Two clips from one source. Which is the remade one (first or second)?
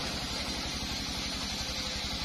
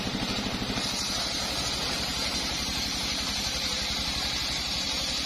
second